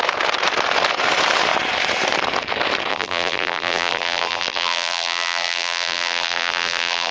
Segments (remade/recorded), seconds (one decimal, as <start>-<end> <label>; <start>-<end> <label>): 0.0-2.9 recorded; 2.9-7.1 remade